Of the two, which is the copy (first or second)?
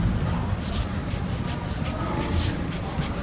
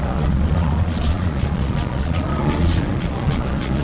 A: second